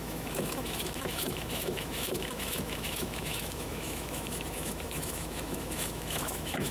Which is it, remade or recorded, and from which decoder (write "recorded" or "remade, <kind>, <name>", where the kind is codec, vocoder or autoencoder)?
remade, autoencoder, DAC-VAE